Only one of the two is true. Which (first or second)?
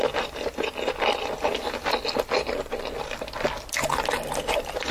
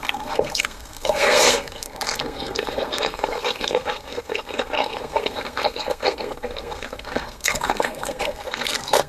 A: first